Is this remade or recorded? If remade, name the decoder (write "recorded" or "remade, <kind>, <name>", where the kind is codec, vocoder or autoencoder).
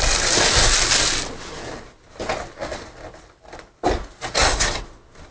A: recorded